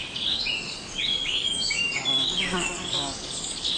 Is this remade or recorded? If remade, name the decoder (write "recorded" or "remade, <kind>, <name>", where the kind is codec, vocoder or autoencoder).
remade, codec, DAC